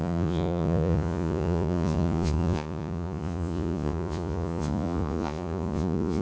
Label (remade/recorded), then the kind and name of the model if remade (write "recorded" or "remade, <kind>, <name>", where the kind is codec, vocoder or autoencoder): remade, vocoder, Vocos